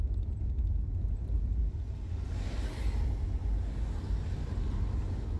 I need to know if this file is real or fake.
real